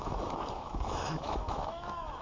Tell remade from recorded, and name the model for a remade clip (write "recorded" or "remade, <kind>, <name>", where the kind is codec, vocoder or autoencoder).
remade, autoencoder, DAC-VAE